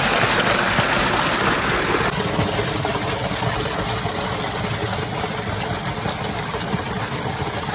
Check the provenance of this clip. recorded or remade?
recorded